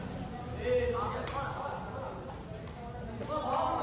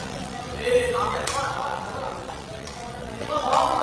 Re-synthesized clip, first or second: second